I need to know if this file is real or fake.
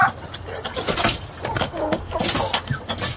real